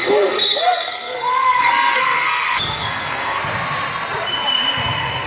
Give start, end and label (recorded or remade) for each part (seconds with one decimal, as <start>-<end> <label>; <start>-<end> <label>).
0.0-3.4 remade; 3.4-5.3 recorded